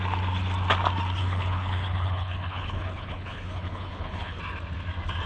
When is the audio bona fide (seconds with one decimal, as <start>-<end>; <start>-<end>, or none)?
0.0-1.2; 4.4-5.3